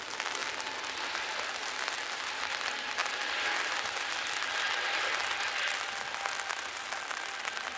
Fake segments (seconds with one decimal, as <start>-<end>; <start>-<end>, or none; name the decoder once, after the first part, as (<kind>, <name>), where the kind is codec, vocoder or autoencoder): none